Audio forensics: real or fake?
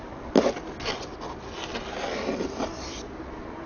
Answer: real